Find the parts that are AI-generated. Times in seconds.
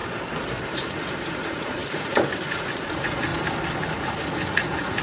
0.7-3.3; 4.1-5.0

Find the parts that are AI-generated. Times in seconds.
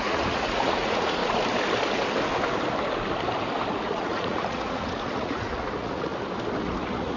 0.0-1.2; 3.7-6.1; 6.6-7.2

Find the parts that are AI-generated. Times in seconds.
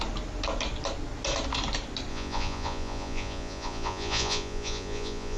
2.1-5.4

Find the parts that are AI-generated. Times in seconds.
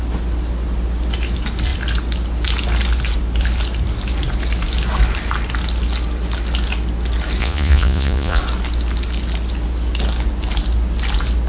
7.4-8.4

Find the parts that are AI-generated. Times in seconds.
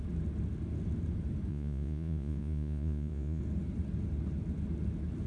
1.5-3.4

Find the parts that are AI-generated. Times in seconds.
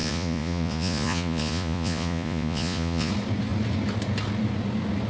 0.0-3.1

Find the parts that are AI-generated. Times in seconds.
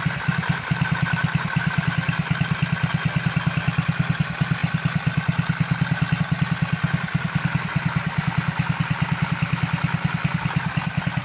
none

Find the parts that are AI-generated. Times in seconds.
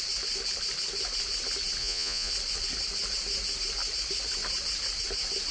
1.8-2.3